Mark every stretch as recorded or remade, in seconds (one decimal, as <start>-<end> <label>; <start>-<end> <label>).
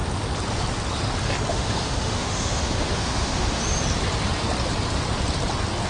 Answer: 0.0-1.5 recorded; 1.5-3.6 remade; 3.6-5.9 recorded